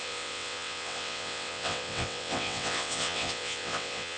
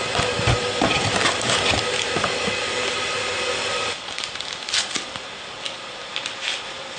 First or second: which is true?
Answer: second